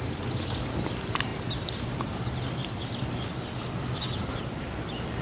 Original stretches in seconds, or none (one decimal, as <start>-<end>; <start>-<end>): none